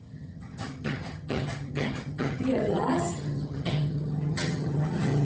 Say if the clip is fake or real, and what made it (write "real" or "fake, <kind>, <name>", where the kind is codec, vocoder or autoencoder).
fake, vocoder, HiFi-GAN